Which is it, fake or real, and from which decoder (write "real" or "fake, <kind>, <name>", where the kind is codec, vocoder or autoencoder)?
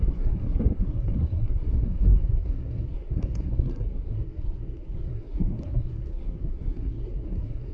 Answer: fake, codec, SNAC